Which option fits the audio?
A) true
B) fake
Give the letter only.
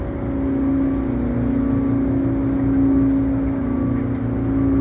A